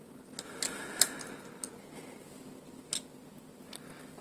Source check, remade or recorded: recorded